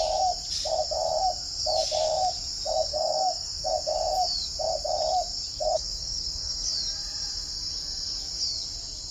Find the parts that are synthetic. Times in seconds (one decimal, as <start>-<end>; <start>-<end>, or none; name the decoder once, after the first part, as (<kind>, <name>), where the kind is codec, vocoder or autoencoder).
2.9-3.7 (codec, DAC); 5.5-6.5